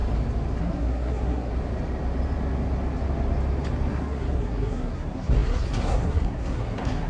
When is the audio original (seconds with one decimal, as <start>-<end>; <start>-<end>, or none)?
0.0-0.6; 1.5-3.9